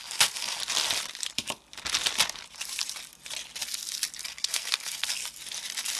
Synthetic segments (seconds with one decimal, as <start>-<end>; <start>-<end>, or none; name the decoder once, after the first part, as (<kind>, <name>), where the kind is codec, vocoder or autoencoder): 0.0-0.6 (codec, SNAC); 4.2-5.2